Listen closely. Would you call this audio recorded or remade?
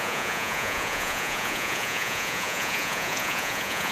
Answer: remade